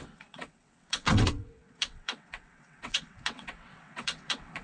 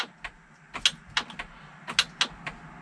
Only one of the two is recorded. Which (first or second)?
second